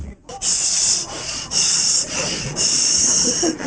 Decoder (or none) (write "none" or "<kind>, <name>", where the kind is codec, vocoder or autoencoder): vocoder, Vocos